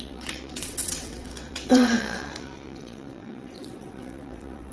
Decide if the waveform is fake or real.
fake